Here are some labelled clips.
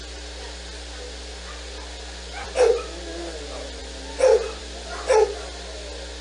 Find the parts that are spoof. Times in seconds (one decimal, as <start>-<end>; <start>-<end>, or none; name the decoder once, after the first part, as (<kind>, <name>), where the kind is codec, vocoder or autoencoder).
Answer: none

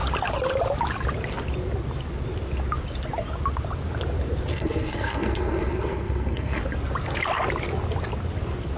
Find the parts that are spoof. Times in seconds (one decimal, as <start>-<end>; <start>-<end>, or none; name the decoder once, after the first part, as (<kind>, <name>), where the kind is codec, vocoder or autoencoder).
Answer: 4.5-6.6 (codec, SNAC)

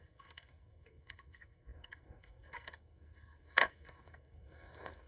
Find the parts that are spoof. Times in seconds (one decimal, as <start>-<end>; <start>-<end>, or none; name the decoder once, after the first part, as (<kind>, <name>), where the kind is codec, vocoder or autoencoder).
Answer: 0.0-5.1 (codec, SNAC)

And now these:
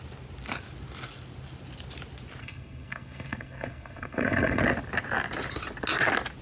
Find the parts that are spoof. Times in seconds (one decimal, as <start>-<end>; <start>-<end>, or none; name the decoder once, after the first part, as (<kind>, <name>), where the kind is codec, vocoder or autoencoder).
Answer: 2.4-4.6 (codec, SNAC)

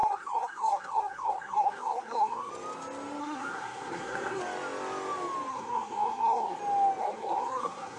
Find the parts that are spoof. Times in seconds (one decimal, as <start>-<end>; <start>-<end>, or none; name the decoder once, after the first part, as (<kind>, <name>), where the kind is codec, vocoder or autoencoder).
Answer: 0.0-2.5 (codec, SNAC); 3.2-4.4; 5.5-6.6; 7.0-8.0

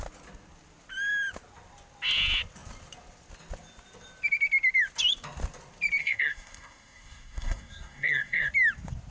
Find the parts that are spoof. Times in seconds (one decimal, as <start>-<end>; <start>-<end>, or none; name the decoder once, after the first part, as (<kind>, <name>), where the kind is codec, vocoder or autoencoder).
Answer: 6.0-8.5 (codec, SNAC)

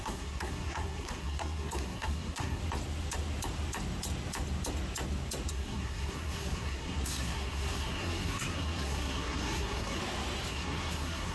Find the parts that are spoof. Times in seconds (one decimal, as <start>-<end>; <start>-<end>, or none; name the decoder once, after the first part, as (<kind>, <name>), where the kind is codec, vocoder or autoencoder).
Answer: 0.0-2.6 (codec, SNAC); 5.5-10.0; 10.5-11.3